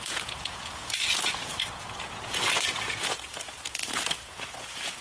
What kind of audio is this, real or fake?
fake